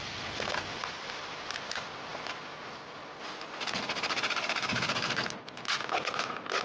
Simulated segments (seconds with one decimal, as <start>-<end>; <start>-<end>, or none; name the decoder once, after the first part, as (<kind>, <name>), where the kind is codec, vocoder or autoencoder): 0.8-1.5 (vocoder, BigVGAN v2)